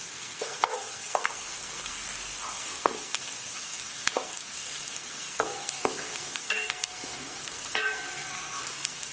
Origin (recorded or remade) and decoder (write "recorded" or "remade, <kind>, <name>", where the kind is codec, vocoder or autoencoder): remade, codec, SNAC